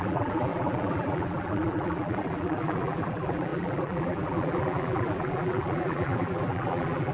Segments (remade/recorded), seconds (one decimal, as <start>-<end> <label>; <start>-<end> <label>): 0.0-7.1 remade